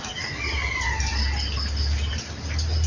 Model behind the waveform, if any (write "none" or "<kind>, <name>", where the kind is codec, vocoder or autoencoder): none